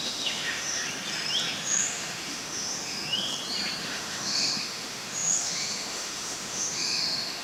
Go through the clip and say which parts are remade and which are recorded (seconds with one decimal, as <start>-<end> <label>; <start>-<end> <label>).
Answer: 0.0-0.8 remade; 0.8-1.5 recorded; 1.5-3.3 remade; 3.3-3.8 recorded; 3.8-7.4 remade

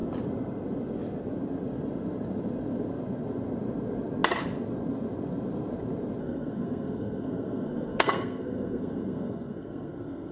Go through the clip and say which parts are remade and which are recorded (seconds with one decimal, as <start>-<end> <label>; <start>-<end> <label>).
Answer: 0.0-6.2 recorded; 6.2-10.3 remade